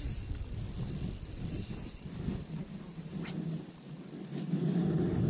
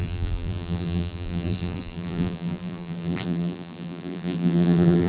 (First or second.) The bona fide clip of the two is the first